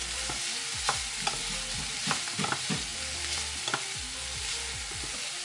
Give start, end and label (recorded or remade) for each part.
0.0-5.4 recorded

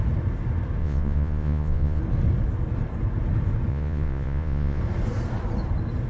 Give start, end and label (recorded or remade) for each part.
0.0-0.8 recorded; 0.8-2.0 remade; 2.0-3.7 recorded; 3.7-4.8 remade; 4.8-6.1 recorded

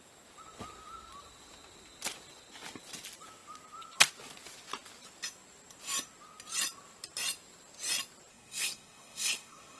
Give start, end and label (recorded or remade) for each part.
0.0-8.3 recorded; 8.3-9.8 remade

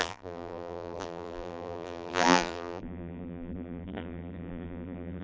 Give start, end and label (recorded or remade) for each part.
0.0-5.2 remade

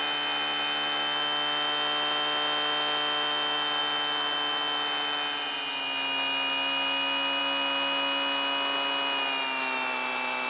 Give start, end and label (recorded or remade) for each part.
0.0-10.5 recorded

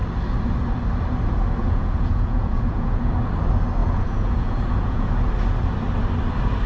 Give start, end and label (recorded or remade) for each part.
0.0-1.6 recorded; 1.6-3.1 remade; 3.1-3.8 recorded; 3.8-5.1 remade; 5.1-6.7 recorded

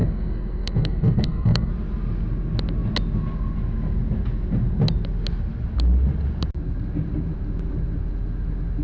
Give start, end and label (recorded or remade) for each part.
0.0-1.7 remade; 1.7-8.8 recorded

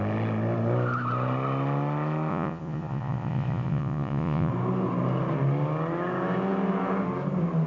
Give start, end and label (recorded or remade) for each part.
0.0-2.3 recorded; 2.3-4.5 remade; 4.5-7.7 recorded